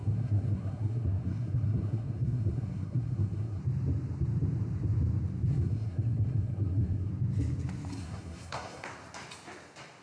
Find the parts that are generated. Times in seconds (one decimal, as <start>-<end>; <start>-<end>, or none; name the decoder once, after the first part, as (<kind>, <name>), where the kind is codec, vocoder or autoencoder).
0.0-3.6 (codec, SNAC); 5.5-7.1; 7.9-8.9